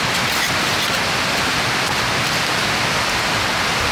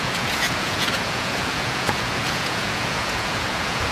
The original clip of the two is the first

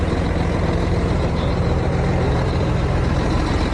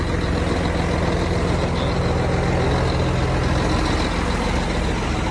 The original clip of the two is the second